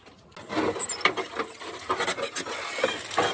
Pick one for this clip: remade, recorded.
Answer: recorded